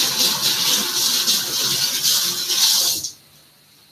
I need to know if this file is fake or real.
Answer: real